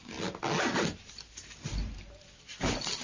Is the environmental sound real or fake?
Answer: real